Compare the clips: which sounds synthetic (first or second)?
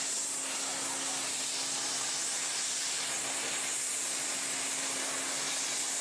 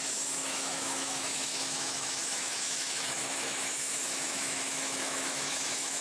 second